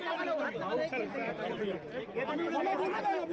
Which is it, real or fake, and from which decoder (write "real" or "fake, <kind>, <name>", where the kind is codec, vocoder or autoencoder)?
real